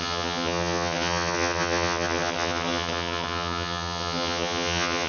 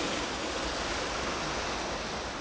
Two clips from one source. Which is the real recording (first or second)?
second